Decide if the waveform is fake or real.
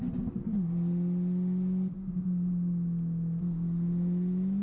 real